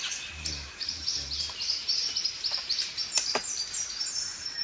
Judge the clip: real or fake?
real